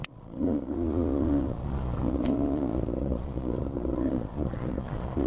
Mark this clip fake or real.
fake